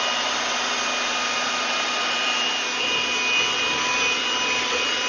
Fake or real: real